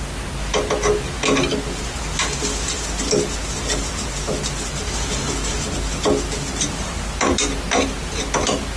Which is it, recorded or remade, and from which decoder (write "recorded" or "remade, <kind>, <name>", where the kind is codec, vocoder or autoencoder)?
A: recorded